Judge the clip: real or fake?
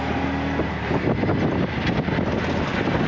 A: real